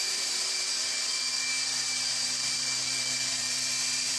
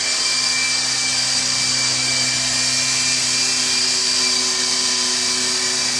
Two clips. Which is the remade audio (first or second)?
first